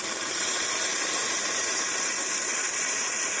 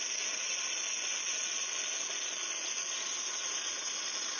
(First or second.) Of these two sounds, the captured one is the second